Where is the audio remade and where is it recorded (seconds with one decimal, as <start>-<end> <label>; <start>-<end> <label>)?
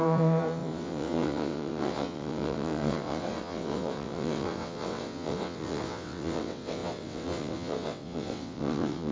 0.0-9.1 remade